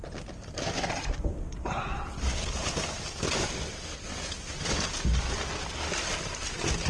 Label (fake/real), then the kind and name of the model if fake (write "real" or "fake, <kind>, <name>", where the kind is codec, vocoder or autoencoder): real